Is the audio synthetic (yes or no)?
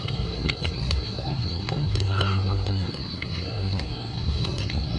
yes